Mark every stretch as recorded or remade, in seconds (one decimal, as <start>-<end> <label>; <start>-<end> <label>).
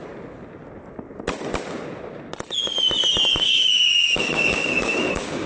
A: 0.0-3.3 recorded; 3.3-5.5 remade